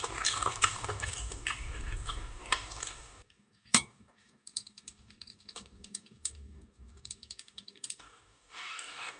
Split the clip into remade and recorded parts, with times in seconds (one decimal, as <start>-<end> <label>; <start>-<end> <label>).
0.0-9.2 remade